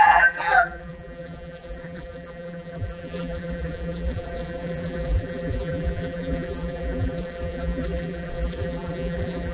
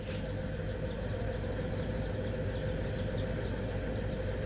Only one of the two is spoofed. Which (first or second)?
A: first